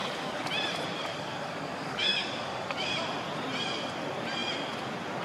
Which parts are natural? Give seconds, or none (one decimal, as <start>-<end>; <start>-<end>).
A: 0.5-1.0; 2.9-5.2